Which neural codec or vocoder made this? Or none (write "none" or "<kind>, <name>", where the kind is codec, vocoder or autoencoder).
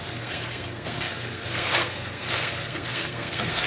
codec, SNAC